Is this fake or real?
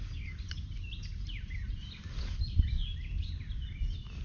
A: real